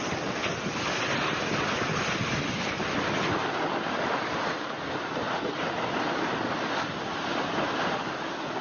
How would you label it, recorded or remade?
recorded